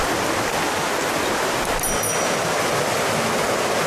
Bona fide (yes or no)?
yes